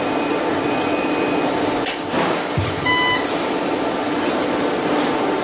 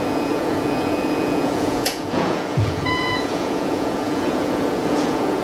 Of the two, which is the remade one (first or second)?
second